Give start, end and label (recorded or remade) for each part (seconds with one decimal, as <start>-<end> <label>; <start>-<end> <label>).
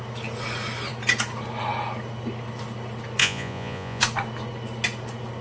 0.0-3.2 recorded; 3.2-4.0 remade; 4.0-5.4 recorded